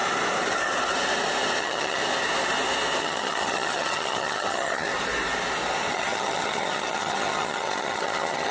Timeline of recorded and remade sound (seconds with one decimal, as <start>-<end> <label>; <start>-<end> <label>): 0.0-1.6 recorded; 1.6-2.0 remade; 2.0-3.0 recorded; 3.0-4.9 remade; 4.9-5.9 recorded; 5.9-8.5 remade